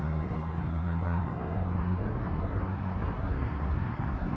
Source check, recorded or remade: remade